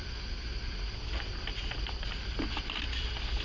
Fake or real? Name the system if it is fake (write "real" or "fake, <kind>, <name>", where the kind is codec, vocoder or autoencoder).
real